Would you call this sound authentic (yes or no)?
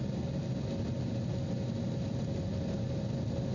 yes